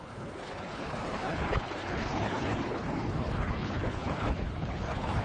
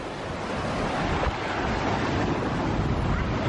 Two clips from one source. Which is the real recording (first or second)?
second